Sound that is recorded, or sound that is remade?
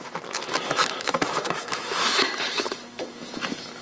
remade